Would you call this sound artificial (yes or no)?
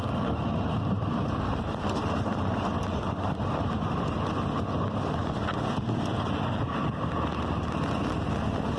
no